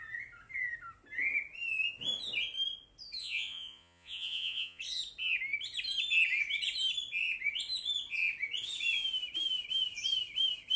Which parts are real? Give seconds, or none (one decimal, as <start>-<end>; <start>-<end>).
0.0-3.2; 4.8-10.8